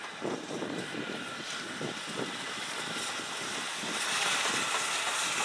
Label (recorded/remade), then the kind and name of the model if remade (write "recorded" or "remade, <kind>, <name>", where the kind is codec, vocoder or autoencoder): recorded